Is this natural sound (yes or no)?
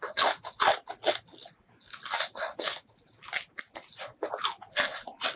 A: yes